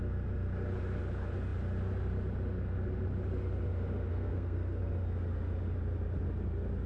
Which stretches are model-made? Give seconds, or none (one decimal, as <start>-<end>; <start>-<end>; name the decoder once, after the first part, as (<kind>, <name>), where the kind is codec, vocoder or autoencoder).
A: 4.1-4.8 (codec, SNAC)